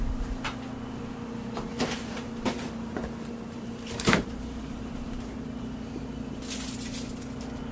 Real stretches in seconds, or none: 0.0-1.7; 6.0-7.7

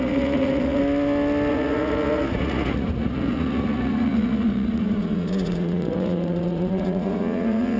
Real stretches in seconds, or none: 0.8-1.5